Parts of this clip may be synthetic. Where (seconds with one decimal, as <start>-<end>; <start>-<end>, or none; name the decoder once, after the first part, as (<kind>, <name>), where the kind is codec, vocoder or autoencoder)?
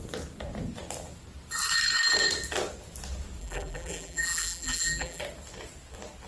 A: 3.4-5.2 (vocoder, BigVGAN v2)